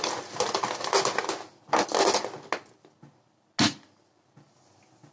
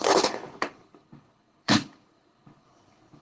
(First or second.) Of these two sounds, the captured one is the first